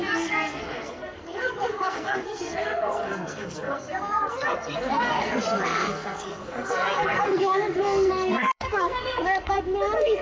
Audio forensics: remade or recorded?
remade